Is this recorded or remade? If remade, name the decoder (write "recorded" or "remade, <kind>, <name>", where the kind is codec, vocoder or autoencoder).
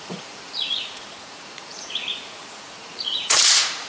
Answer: remade, vocoder, Vocos